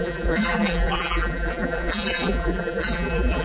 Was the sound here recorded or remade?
remade